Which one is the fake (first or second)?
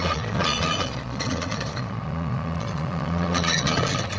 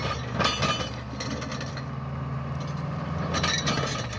first